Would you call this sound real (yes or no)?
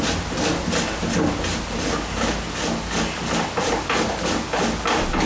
yes